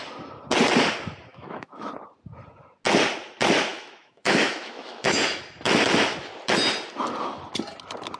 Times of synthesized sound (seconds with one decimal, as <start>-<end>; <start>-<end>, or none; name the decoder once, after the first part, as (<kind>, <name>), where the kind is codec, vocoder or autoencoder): 1.3-1.9 (autoencoder, DAC-VAE); 3.7-5.4